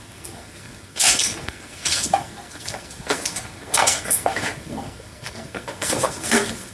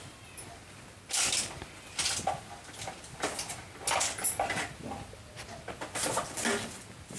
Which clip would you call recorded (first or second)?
second